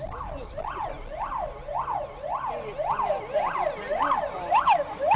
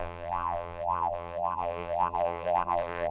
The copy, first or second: second